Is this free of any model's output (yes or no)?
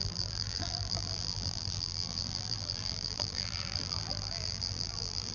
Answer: no